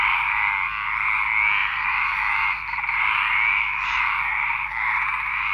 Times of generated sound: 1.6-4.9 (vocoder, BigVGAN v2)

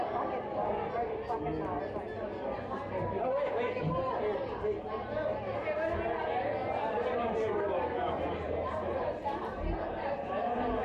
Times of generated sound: 6.6-10.4 (vocoder, BigVGAN v2)

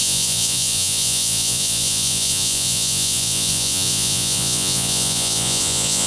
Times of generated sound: 0.0-6.1 (vocoder, Vocos)

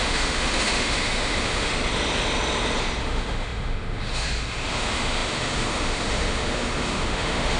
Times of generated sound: 0.0-1.7 (autoencoder, DAC-VAE); 3.0-7.6

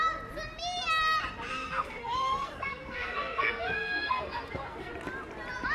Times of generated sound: 1.5-4.9 (codec, SNAC)

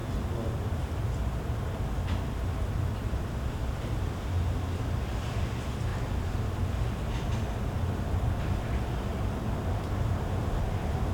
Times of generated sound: none

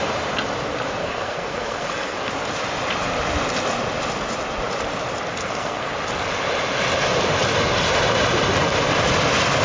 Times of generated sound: 1.0-2.3 (codec, SNAC); 5.3-5.9

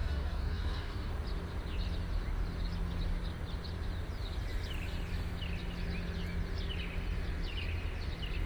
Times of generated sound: 0.0-1.1 (codec, DAC)